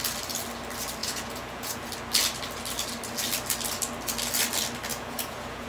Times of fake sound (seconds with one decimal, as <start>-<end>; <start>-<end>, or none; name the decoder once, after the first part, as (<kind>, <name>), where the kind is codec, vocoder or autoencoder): 1.0-1.9 (vocoder, Vocos); 4.9-5.7